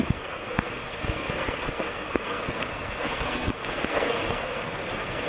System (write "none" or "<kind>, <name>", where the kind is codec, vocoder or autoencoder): codec, SNAC